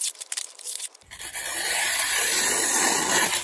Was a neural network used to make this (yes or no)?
yes